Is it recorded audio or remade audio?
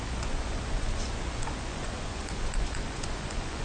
remade